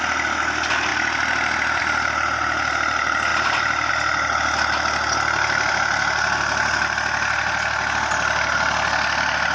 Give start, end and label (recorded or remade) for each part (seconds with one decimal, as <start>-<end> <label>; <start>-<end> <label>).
0.0-9.5 recorded